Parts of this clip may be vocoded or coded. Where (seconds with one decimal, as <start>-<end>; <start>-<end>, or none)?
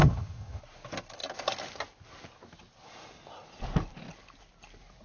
0.0-0.6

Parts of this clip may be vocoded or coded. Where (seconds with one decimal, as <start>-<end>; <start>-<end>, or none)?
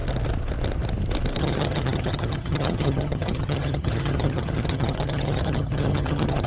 1.4-6.5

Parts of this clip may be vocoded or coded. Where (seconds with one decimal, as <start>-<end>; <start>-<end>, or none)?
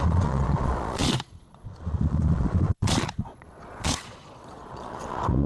0.0-5.5